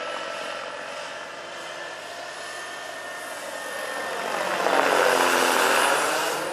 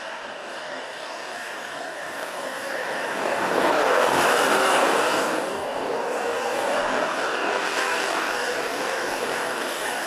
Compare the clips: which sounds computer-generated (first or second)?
second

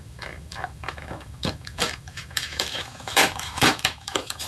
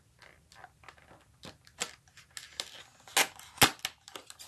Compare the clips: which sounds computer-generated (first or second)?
first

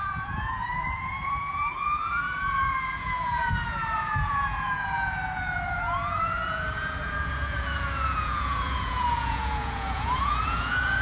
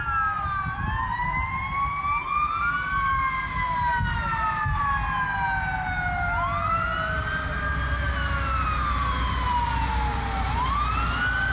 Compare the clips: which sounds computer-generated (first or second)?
first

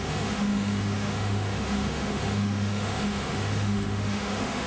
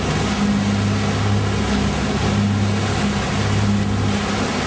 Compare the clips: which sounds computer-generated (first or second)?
first